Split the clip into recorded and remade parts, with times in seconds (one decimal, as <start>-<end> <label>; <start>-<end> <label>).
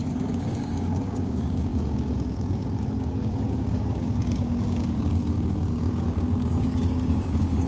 0.0-7.7 remade